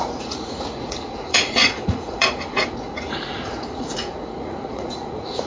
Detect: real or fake fake